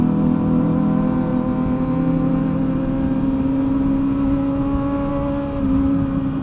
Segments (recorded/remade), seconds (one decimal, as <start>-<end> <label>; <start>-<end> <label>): 0.0-6.4 recorded